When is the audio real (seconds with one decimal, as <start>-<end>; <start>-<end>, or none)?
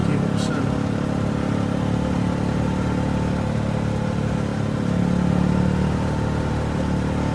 0.0-7.3